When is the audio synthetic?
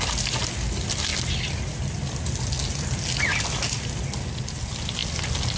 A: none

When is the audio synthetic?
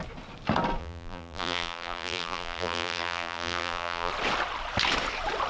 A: 0.8-4.1 (vocoder, BigVGAN v2)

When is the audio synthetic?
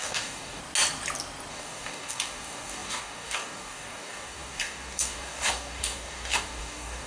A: 0.0-0.6 (codec, DAC); 1.5-7.1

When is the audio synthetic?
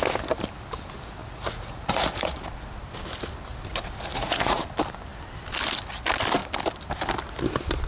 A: 1.2-2.4 (vocoder, Vocos); 4.1-4.6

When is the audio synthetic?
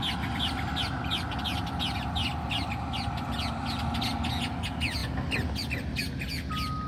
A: none